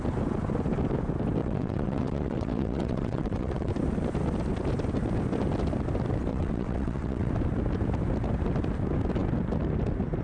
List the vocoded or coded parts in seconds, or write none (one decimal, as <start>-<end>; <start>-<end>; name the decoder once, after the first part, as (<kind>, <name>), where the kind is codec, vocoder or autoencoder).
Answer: 1.4-3.7 (vocoder, WaveNeXt); 6.3-7.3